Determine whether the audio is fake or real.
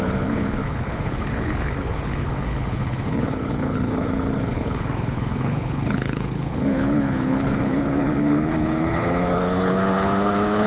fake